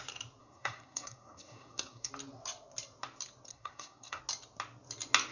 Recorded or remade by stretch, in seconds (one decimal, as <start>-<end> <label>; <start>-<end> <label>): 0.0-0.4 recorded; 0.4-2.1 remade; 2.1-3.5 recorded; 3.5-4.2 remade; 4.2-5.3 recorded